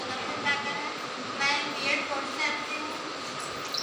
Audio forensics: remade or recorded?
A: recorded